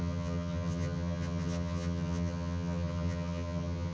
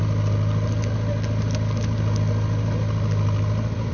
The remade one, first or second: first